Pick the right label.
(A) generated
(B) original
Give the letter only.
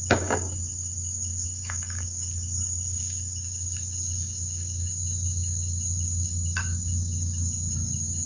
A